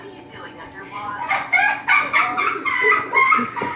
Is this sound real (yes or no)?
no